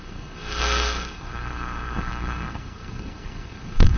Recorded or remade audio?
remade